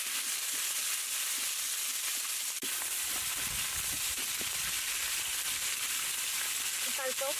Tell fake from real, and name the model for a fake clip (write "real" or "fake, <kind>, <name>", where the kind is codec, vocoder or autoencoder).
real